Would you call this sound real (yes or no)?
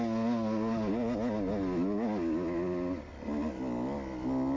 yes